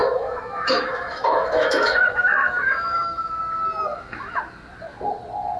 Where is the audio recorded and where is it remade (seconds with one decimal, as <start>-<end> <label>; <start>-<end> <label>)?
0.0-3.4 remade; 3.4-3.9 recorded; 3.9-4.4 remade; 4.4-5.6 recorded